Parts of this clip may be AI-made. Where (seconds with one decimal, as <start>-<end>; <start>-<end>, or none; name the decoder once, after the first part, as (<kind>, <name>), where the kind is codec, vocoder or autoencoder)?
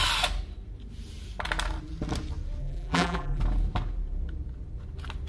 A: 2.6-3.4 (vocoder, BigVGAN v2)